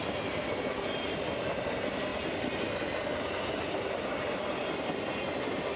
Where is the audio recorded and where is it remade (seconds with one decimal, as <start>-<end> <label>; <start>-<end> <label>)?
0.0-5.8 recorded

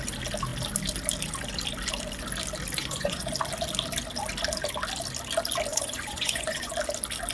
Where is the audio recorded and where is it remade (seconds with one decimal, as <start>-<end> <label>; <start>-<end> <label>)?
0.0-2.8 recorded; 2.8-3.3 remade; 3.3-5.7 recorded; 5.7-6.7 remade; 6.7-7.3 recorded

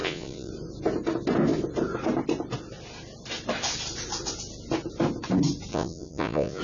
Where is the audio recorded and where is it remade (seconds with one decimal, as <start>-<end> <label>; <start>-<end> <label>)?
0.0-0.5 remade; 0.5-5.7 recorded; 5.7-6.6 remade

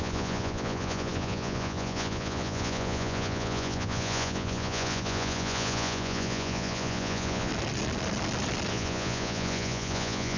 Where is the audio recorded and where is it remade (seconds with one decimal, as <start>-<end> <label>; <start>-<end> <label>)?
0.0-7.5 remade; 7.5-8.7 recorded; 8.7-10.4 remade

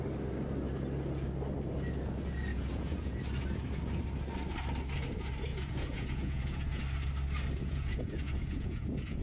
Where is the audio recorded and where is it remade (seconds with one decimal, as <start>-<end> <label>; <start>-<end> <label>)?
0.0-2.5 recorded; 2.5-3.2 remade; 3.2-5.5 recorded; 5.5-6.8 remade; 6.8-7.6 recorded; 7.6-9.2 remade

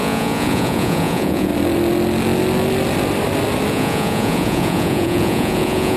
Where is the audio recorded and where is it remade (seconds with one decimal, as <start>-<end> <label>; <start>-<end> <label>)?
0.0-1.5 remade; 1.5-3.7 recorded; 3.7-6.0 remade

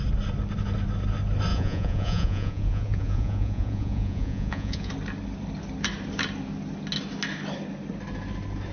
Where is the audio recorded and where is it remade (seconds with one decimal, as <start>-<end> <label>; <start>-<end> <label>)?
0.0-1.5 recorded; 1.5-4.9 remade; 4.9-8.7 recorded